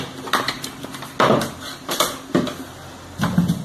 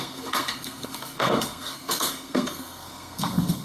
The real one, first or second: first